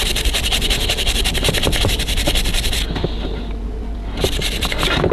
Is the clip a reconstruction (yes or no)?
no